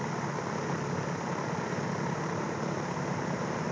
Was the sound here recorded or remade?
recorded